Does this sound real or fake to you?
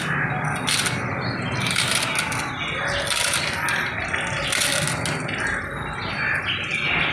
real